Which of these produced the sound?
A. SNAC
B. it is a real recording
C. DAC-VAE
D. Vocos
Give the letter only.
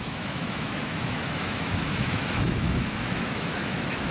C